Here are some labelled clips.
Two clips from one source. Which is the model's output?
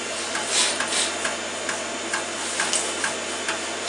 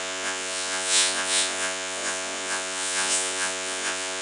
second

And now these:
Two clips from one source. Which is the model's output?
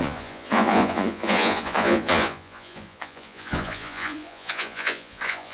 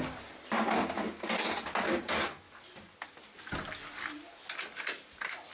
first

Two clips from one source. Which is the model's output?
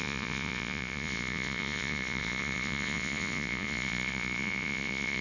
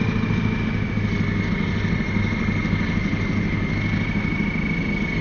first